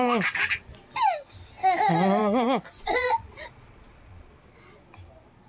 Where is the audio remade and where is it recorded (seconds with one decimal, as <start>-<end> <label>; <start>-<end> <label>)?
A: 0.0-2.2 recorded; 2.2-4.3 remade; 4.3-5.5 recorded

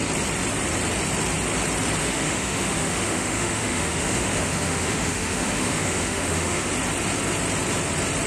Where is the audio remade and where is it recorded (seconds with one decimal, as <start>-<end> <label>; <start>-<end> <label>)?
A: 0.0-2.0 recorded; 2.0-6.7 remade; 6.7-8.3 recorded

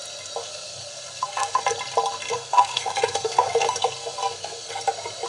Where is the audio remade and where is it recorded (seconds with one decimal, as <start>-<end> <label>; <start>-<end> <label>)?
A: 0.0-0.4 recorded; 0.4-1.6 remade; 1.6-2.3 recorded; 2.3-4.8 remade; 4.8-5.3 recorded

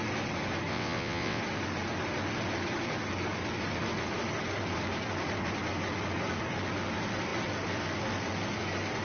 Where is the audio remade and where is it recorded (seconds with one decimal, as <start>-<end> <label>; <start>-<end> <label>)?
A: 0.0-0.7 recorded; 0.7-1.4 remade; 1.4-9.0 recorded

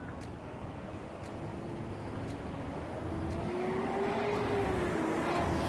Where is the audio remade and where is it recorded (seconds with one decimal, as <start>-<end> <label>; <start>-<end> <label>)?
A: 0.0-0.4 recorded; 0.4-1.0 remade; 1.0-5.7 recorded